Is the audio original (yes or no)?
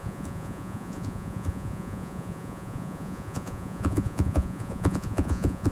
no